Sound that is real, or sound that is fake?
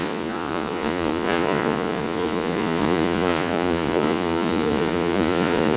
fake